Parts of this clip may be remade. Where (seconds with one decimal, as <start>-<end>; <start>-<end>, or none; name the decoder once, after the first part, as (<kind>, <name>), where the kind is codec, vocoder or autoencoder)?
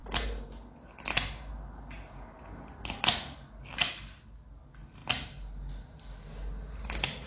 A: none